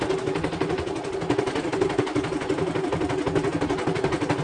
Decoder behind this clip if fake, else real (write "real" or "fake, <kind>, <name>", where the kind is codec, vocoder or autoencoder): real